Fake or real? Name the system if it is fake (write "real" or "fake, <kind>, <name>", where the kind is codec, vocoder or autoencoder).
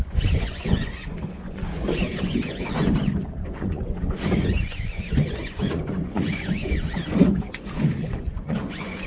fake, vocoder, Vocos